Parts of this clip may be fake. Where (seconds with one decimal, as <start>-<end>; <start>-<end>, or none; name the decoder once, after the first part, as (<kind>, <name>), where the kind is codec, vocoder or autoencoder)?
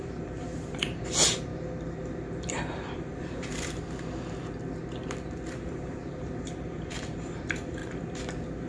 0.0-1.5 (vocoder, BigVGAN v2); 2.7-3.8; 5.5-7.8